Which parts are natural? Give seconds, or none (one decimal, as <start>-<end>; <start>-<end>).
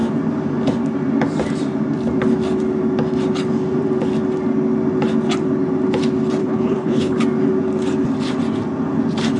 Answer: 0.0-6.4; 7.2-9.4